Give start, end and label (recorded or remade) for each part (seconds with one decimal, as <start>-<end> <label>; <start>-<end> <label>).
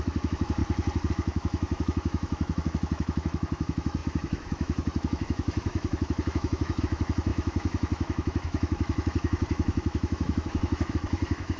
0.0-0.6 remade; 0.6-1.1 recorded; 1.1-11.6 remade